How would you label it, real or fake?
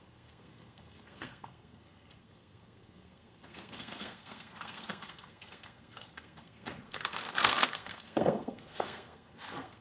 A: fake